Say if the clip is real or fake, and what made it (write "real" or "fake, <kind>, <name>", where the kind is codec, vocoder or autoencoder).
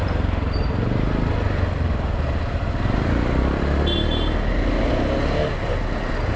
real